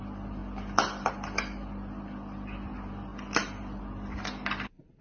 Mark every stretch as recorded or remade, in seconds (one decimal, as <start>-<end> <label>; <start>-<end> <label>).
0.0-5.0 recorded